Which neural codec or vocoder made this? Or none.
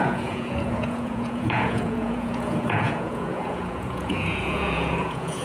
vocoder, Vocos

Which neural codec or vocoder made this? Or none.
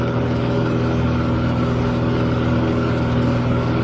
codec, DAC